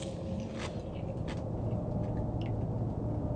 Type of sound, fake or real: real